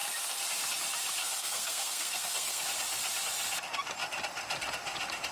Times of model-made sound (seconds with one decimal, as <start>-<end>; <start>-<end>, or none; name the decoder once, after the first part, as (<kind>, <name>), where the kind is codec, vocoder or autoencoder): 1.2-2.6 (codec, SNAC)